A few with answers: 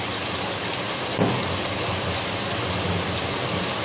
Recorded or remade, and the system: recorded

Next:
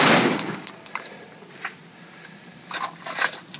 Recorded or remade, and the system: recorded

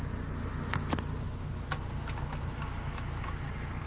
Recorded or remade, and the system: recorded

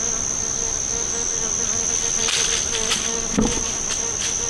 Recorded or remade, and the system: recorded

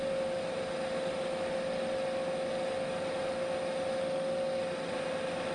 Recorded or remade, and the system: recorded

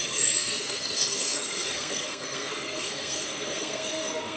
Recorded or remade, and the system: remade, codec, SNAC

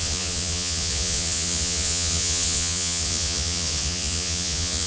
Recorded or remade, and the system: remade, vocoder, Vocos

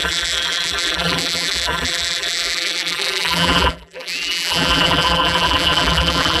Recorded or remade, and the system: remade, vocoder, BigVGAN v2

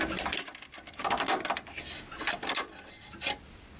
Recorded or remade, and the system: recorded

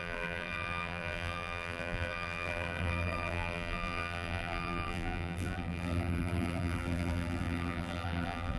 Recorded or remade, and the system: remade, vocoder, BigVGAN v2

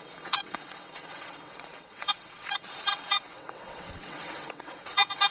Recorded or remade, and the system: remade, vocoder, WaveNeXt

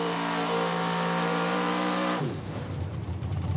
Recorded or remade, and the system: remade, vocoder, BigVGAN v2